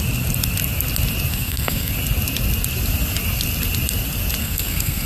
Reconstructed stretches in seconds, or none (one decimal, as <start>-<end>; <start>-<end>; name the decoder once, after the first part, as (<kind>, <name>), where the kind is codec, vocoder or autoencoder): 1.3-1.9 (codec, SNAC); 4.4-5.1